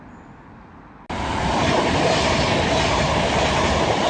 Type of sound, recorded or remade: recorded